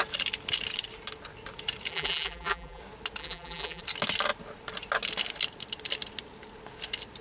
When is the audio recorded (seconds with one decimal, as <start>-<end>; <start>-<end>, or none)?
0.0-1.9; 2.8-3.2; 3.8-7.2